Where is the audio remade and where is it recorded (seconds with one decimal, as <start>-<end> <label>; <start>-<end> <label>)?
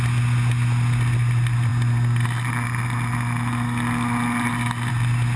0.0-5.4 recorded